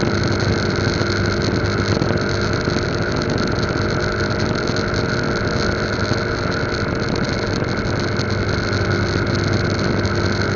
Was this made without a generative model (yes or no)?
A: yes